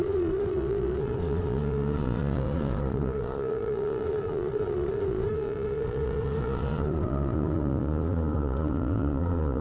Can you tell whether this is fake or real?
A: fake